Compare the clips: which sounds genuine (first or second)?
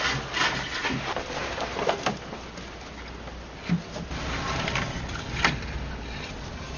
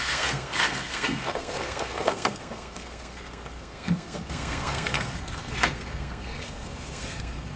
first